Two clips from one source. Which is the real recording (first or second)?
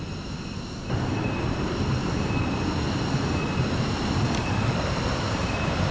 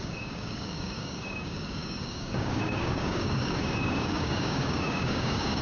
first